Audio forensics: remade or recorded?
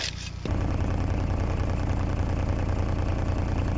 recorded